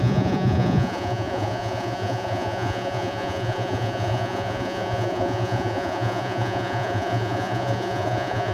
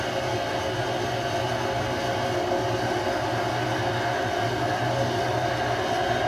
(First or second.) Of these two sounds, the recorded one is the second